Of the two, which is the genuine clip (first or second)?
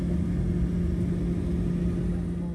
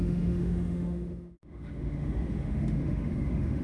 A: first